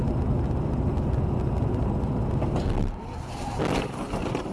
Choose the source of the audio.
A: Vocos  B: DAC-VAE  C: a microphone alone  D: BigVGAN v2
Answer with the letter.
C